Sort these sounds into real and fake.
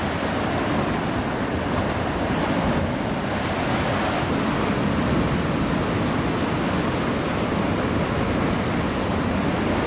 real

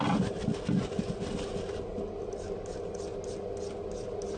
real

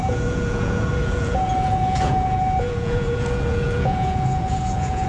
fake